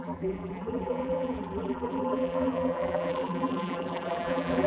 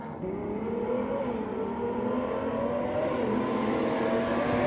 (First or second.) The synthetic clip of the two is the first